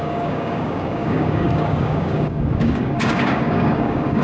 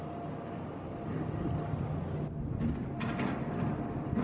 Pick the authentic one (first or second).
second